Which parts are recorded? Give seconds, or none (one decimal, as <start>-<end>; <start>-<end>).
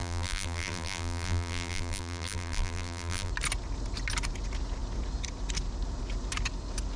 3.3-7.0